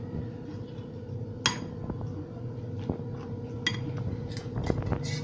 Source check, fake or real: real